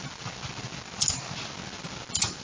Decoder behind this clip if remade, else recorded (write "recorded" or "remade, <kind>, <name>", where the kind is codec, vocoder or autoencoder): recorded